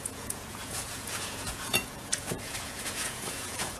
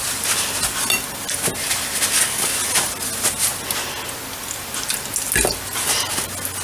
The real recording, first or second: second